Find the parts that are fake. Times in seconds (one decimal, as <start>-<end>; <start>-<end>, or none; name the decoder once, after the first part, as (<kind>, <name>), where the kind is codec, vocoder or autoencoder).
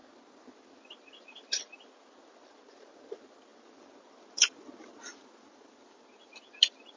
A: none